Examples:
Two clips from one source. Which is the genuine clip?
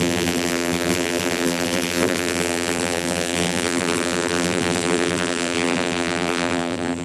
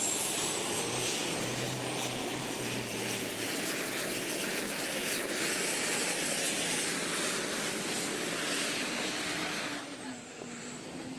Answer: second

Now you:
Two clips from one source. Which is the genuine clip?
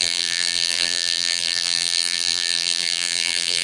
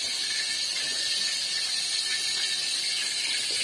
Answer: second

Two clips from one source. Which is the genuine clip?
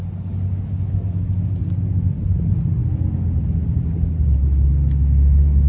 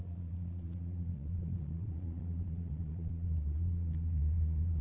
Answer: first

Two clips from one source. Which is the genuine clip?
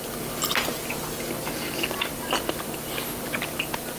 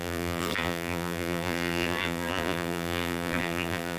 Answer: first